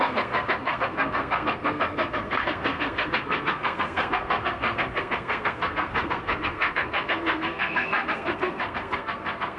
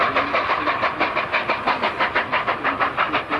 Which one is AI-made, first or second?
first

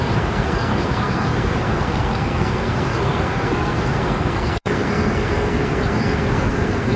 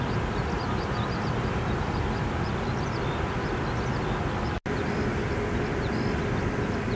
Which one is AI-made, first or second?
first